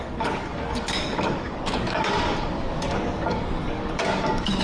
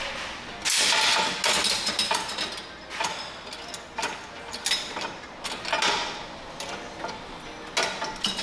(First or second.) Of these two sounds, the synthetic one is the first